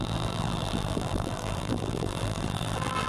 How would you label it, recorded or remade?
remade